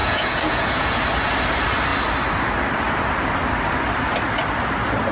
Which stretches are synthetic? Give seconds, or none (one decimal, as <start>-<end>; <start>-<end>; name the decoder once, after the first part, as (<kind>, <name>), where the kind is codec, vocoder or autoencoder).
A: 0.0-1.0 (vocoder, Vocos)